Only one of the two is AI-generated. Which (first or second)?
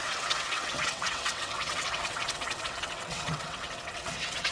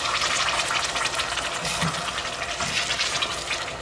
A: first